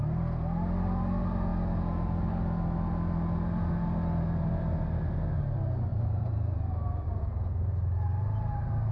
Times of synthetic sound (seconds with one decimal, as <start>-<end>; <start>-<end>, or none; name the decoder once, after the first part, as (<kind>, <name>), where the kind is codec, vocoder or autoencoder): 5.9-7.2 (vocoder, BigVGAN v2)